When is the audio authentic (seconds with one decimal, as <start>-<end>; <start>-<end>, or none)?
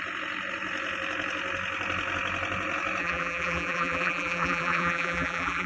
0.0-3.0